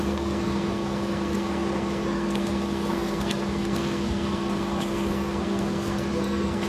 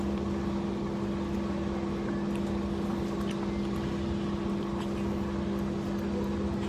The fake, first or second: first